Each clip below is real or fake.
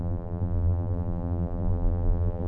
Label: fake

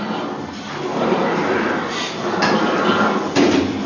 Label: fake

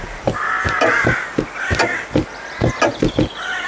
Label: real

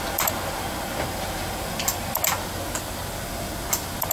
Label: real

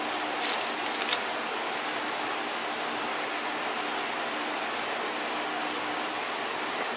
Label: real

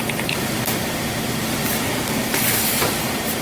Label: real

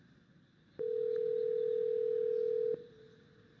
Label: real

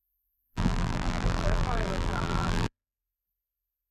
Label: fake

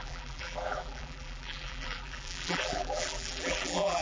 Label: fake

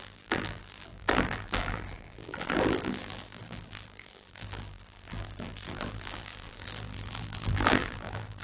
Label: fake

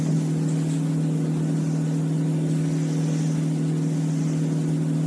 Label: real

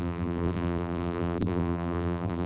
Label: fake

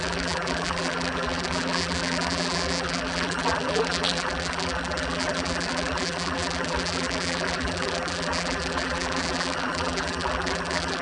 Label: fake